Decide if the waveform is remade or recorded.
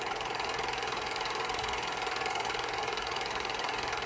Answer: remade